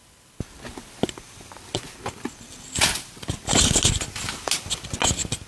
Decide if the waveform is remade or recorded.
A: recorded